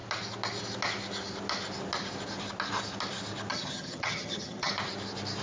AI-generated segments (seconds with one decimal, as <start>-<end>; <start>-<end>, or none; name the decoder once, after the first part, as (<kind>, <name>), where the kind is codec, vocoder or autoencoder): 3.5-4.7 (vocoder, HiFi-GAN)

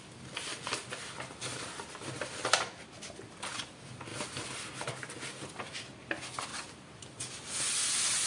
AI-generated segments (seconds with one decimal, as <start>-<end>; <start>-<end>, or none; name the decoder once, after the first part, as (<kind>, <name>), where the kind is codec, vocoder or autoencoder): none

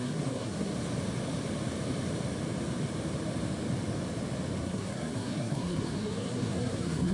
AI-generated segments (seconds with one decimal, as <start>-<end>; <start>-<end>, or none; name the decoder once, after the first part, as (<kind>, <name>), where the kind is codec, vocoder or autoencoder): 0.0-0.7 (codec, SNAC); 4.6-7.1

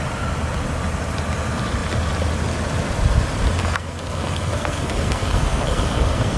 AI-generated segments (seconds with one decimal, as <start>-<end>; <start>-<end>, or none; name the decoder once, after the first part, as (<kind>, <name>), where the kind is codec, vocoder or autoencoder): 3.6-6.4 (codec, SNAC)

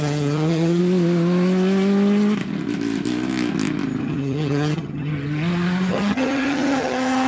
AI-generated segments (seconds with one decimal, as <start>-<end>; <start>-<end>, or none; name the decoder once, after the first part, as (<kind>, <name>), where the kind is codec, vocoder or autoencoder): 0.0-0.8 (vocoder, HiFi-GAN); 4.0-5.1; 5.9-7.3

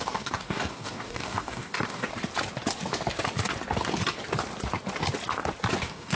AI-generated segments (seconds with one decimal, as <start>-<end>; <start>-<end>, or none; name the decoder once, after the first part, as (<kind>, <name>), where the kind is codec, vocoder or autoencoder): 0.0-2.1 (codec, DAC); 5.8-6.2